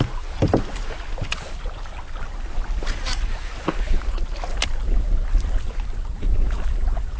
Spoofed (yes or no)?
no